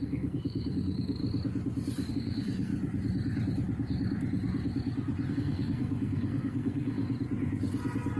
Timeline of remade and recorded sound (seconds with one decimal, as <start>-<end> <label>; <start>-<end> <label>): 0.0-1.2 remade; 1.2-2.1 recorded; 2.1-2.7 remade; 2.7-5.3 recorded; 5.3-7.0 remade; 7.0-8.2 recorded